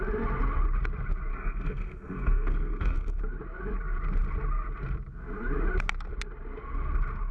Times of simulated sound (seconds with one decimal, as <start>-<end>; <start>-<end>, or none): 1.3-3.2